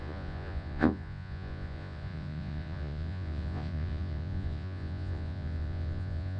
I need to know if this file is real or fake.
fake